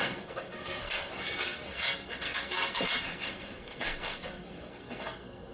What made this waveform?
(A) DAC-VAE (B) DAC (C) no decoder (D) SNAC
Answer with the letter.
D